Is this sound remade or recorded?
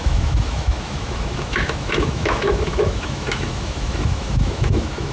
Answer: remade